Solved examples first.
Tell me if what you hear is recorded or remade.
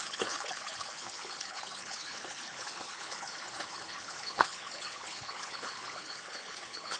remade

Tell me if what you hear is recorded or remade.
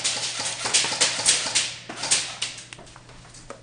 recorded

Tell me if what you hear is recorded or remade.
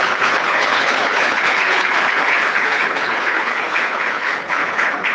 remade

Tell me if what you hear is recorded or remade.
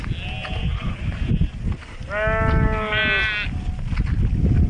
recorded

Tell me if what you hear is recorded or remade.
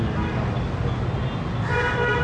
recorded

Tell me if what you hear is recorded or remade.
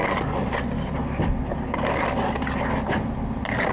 recorded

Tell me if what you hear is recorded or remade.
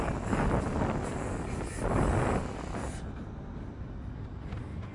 recorded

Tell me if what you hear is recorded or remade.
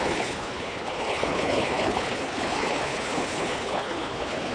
remade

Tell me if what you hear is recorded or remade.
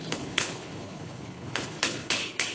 remade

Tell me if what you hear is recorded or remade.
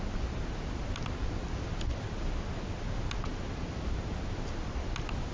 recorded